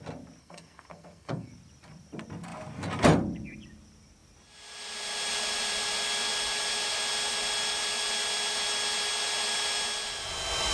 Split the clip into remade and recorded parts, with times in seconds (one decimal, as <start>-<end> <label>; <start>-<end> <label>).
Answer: 0.0-0.4 recorded; 0.4-1.5 remade; 1.5-10.7 recorded